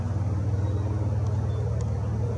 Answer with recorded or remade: recorded